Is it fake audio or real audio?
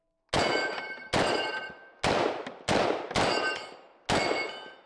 real